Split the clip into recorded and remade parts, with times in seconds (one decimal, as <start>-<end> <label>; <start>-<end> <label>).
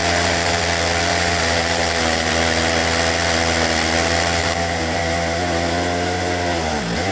0.0-0.6 remade; 0.6-1.1 recorded; 1.1-2.3 remade; 2.3-4.4 recorded; 4.4-5.0 remade; 5.0-7.1 recorded